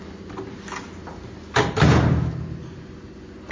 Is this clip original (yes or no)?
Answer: yes